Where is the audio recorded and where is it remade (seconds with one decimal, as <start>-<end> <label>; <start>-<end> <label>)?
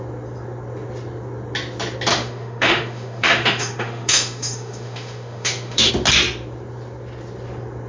0.0-2.1 recorded; 2.1-5.9 remade; 5.9-7.9 recorded